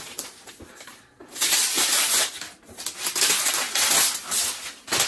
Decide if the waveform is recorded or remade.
recorded